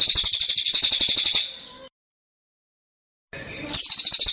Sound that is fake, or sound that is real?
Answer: real